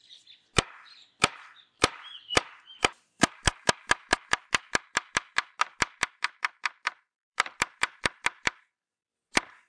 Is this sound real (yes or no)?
no